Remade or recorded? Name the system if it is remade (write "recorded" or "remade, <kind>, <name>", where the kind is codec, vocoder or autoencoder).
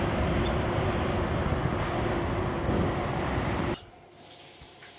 recorded